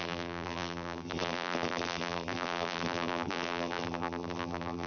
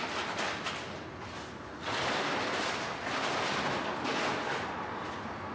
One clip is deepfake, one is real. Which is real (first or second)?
second